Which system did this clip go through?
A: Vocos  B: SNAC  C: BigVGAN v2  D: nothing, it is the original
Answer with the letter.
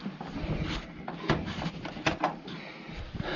D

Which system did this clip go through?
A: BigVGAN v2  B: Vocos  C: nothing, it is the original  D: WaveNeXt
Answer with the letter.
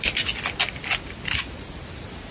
C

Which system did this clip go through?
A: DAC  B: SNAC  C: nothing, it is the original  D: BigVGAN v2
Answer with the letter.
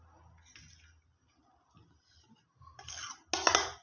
C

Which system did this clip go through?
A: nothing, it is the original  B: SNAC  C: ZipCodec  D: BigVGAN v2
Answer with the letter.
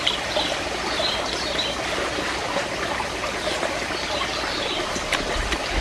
A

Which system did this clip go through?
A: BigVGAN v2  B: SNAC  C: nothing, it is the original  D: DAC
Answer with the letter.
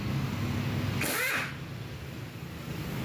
C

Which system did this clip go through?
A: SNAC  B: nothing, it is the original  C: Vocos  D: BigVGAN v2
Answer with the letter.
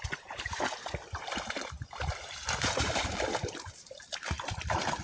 D